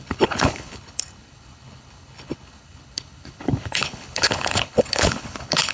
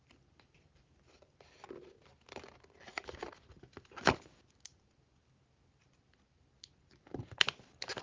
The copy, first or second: first